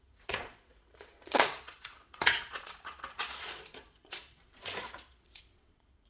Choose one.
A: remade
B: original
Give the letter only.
A